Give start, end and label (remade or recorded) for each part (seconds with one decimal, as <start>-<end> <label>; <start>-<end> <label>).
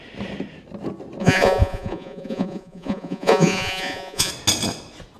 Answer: 0.0-1.2 recorded; 1.2-4.3 remade; 4.3-5.2 recorded